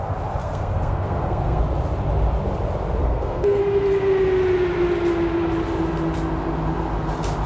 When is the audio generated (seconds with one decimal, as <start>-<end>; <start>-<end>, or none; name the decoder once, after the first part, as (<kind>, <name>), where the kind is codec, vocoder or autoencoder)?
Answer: 0.4-1.6 (codec, SNAC); 3.0-3.6